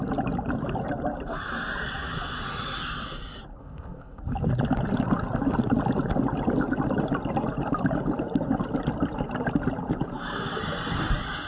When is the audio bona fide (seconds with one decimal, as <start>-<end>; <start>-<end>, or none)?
0.0-3.6; 4.2-11.5